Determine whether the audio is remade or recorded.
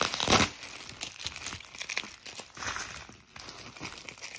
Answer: recorded